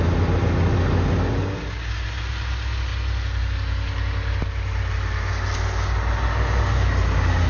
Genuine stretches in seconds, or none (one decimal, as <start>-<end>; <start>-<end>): 0.0-7.5